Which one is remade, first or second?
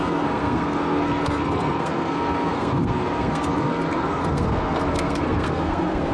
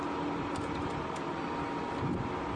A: first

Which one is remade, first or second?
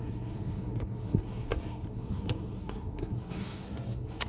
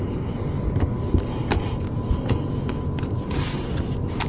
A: first